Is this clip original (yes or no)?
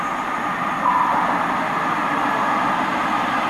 yes